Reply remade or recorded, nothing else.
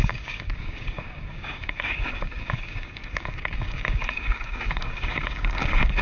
remade